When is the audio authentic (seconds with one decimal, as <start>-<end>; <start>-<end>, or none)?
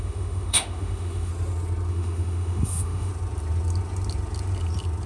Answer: 1.3-1.9; 3.1-5.1